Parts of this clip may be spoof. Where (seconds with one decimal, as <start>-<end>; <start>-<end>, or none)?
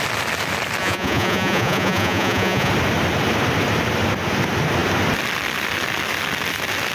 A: 0.8-2.7